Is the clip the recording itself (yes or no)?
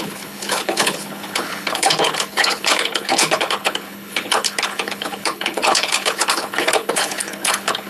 no